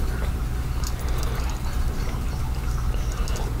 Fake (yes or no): no